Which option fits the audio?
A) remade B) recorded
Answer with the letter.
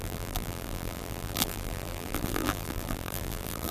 A